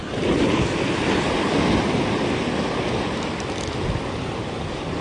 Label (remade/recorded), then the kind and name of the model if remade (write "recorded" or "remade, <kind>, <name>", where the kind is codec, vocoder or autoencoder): recorded